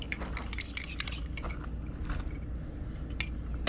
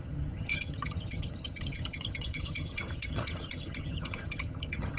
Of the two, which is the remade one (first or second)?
second